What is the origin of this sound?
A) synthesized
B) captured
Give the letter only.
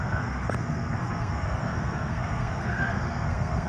A